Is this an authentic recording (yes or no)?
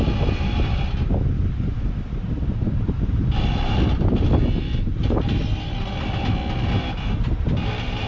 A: yes